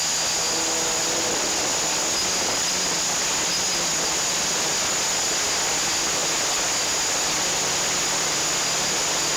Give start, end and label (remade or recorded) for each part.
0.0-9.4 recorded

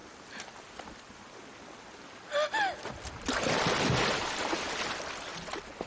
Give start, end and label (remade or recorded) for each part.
0.0-5.3 recorded; 5.3-5.9 remade

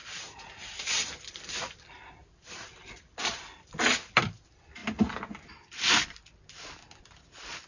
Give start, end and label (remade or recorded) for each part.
0.0-4.8 remade; 4.8-7.0 recorded; 7.0-7.7 remade

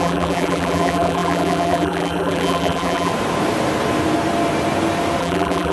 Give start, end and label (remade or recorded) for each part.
0.0-3.1 remade; 3.1-5.2 recorded; 5.2-5.7 remade